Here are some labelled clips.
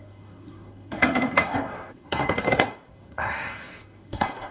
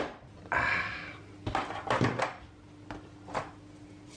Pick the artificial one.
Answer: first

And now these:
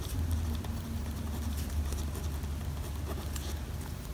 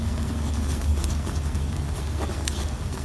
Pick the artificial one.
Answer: second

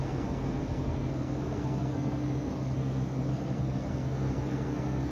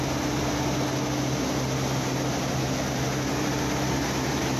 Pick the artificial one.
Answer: first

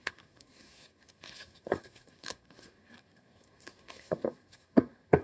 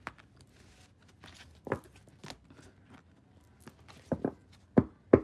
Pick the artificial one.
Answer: first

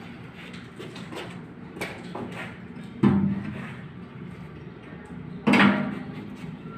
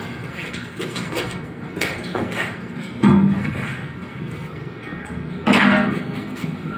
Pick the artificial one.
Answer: second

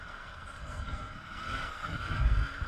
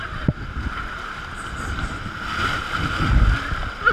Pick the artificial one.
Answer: first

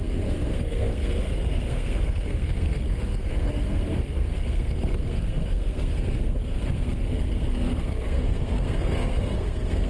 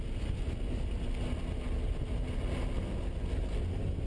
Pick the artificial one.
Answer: first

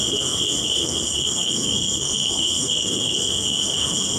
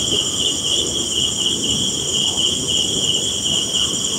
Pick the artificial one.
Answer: first